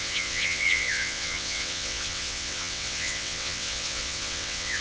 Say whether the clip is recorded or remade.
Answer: remade